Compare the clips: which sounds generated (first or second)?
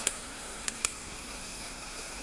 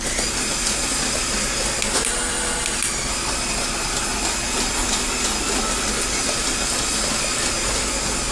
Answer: first